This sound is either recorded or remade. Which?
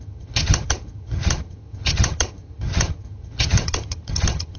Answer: remade